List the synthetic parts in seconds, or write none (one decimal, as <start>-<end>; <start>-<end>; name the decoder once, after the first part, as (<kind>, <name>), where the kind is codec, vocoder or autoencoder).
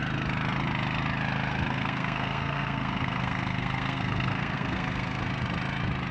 1.5-5.2 (codec, SNAC)